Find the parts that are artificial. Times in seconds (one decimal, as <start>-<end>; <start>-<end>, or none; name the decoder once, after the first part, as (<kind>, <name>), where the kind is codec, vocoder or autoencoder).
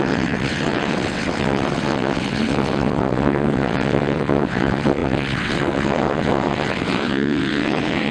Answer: 0.0-8.1 (vocoder, WaveNeXt)